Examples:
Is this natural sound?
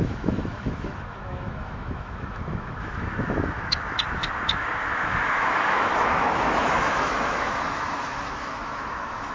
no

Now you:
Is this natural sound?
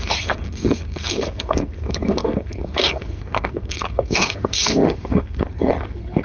no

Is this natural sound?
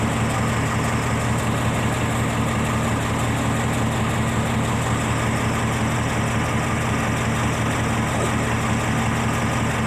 yes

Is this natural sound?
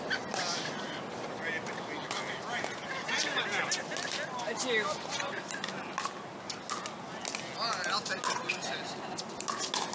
yes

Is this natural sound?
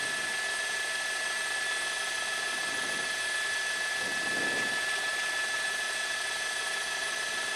yes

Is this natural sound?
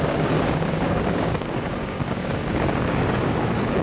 no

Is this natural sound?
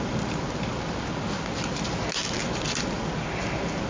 yes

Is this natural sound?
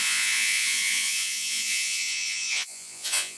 no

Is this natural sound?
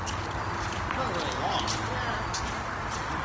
yes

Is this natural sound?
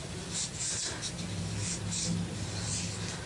yes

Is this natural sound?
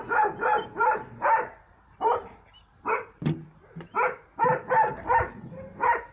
no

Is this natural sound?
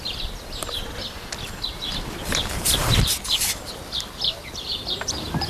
no